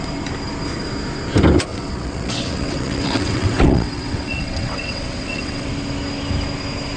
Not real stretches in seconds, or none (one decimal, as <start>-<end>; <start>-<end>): 1.7-5.7